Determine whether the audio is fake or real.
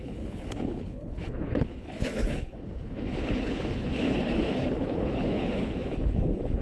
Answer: fake